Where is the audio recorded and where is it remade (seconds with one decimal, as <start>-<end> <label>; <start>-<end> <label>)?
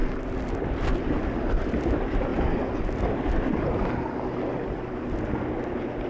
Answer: 0.0-6.1 recorded